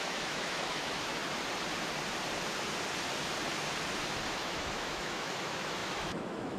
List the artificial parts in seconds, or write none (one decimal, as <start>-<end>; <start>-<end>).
0.0-1.2; 4.3-6.6